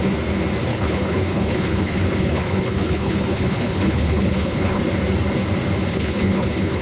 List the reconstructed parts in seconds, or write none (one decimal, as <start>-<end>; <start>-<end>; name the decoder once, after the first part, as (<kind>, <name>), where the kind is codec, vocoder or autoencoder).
0.7-4.8 (codec, HILCodec); 5.9-6.8